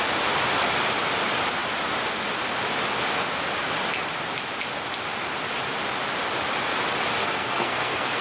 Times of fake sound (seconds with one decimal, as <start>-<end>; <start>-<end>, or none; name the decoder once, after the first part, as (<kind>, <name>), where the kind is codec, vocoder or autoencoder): 7.2-8.2 (codec, SNAC)